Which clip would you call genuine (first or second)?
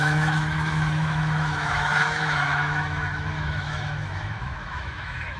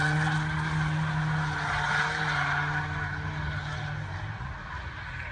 second